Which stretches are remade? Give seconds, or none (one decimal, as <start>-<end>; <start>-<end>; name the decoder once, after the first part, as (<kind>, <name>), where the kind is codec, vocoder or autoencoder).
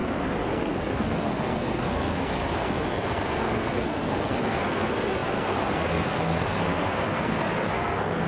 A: 0.0-8.3 (codec, SNAC)